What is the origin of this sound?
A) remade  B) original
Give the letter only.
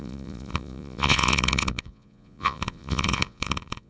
A